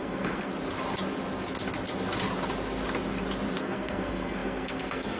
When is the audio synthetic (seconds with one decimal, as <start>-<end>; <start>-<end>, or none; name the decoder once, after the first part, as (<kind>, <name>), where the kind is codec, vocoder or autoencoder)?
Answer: 0.0-0.5 (codec, SNAC); 3.6-5.2